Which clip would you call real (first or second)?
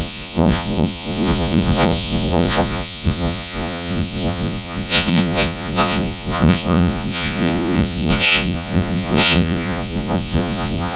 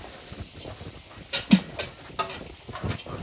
second